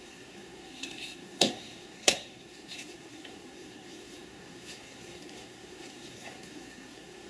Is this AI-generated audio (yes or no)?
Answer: yes